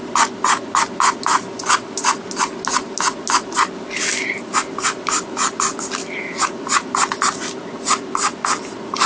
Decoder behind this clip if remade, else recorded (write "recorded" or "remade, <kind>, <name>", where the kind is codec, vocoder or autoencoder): recorded